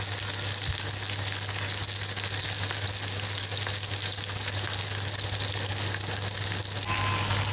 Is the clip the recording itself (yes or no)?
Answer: yes